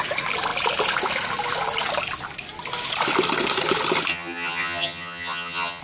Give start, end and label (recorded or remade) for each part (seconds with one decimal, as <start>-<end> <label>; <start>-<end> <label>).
0.0-4.1 recorded; 4.1-5.8 remade